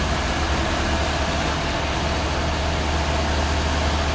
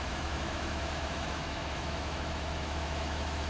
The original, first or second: first